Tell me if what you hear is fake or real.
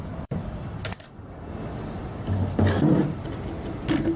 real